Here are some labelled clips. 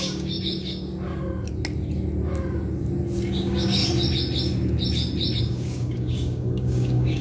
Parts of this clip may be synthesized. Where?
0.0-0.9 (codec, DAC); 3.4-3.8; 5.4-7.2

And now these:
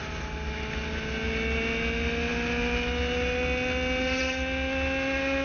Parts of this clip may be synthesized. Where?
none

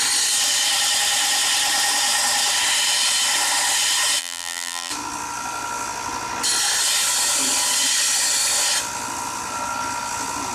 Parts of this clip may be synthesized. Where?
4.2-4.9 (vocoder, BigVGAN v2)

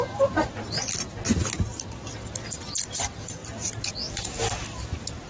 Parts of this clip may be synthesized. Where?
1.7-2.3 (vocoder, BigVGAN v2)

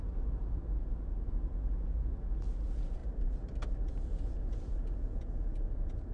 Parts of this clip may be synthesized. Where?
0.0-3.0 (vocoder, Vocos); 3.9-6.1

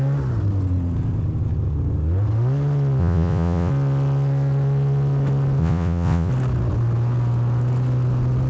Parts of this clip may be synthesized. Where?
3.0-3.7 (vocoder, Vocos); 5.6-6.3

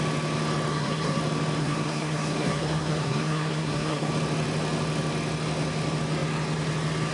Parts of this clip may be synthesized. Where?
0.7-1.2 (codec, SNAC); 1.6-4.1